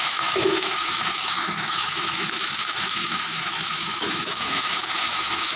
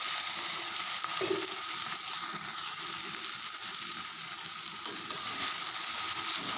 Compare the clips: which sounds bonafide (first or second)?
second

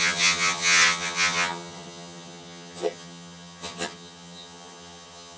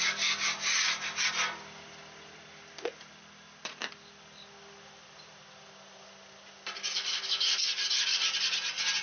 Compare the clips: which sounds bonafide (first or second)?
second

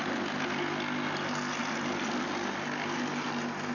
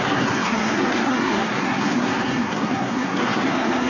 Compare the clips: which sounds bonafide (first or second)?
first